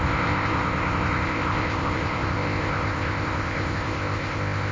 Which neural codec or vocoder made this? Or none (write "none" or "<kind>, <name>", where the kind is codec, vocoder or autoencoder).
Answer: codec, ZipCodec